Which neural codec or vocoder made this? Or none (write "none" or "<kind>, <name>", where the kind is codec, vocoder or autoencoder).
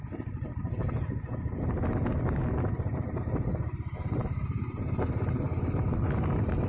none